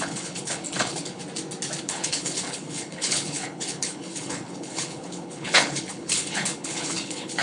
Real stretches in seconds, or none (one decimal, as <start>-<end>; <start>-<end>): 1.2-1.8